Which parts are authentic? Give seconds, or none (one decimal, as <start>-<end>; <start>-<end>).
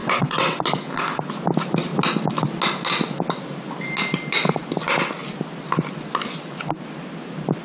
0.6-7.6